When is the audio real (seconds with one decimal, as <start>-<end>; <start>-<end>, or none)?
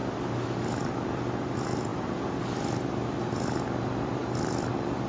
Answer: 0.0-0.8